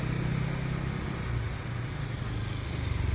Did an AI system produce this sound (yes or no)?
no